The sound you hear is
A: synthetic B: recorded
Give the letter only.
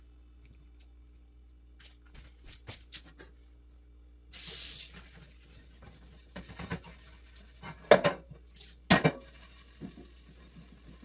B